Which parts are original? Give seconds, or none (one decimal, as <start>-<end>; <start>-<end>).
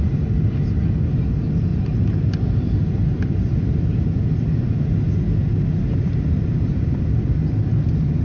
0.0-8.2